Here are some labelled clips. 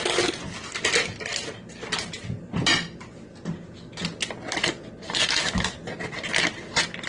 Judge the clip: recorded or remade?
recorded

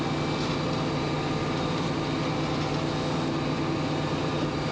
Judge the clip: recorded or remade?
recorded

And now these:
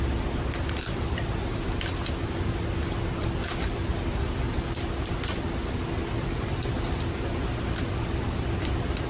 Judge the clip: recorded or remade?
recorded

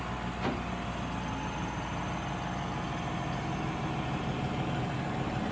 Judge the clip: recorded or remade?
recorded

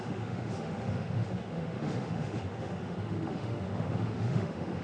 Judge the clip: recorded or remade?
remade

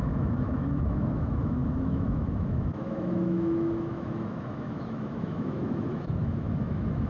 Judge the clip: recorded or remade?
remade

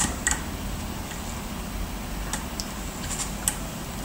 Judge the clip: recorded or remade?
recorded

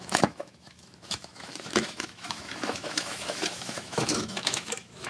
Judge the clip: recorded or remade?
remade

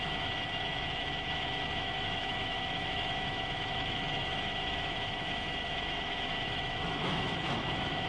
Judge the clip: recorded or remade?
remade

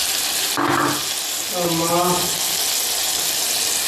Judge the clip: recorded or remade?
recorded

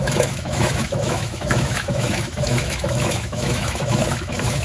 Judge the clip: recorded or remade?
remade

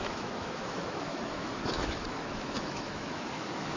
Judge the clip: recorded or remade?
remade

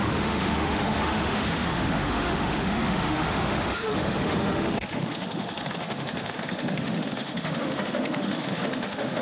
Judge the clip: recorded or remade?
remade